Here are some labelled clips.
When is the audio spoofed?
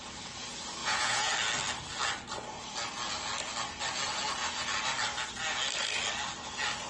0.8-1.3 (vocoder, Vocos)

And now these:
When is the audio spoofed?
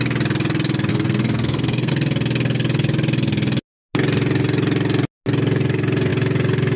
0.9-1.9 (codec, SNAC)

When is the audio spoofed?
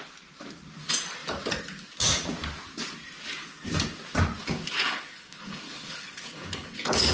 4.4-7.1 (codec, HILCodec)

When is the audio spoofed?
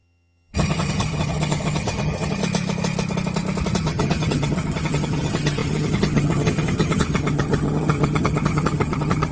0.0-2.4 (vocoder, HiFi-GAN); 3.8-9.3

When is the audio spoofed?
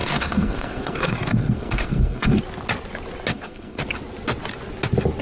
0.0-2.4 (codec, SNAC); 3.3-3.8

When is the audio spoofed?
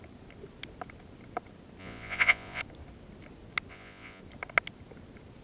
1.8-2.6 (vocoder, Vocos); 3.7-4.2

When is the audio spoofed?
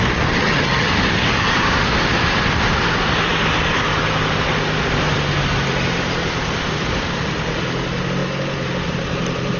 0.4-0.9 (vocoder, HiFi-GAN)